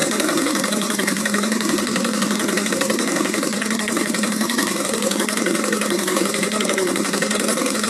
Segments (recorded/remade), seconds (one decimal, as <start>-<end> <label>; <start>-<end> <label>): 0.0-7.9 remade